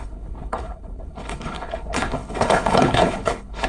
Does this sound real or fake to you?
fake